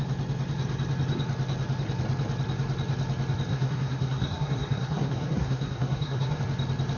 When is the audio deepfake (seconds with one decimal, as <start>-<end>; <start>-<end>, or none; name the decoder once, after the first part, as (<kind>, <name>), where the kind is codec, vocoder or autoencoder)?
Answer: 3.5-6.4 (codec, SNAC)